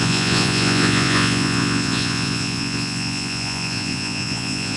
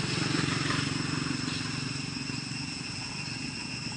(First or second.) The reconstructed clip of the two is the first